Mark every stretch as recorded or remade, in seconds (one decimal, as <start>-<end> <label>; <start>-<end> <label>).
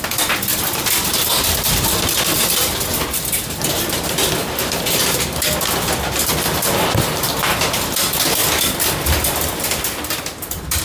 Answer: 0.0-8.4 recorded; 8.4-10.2 remade; 10.2-10.8 recorded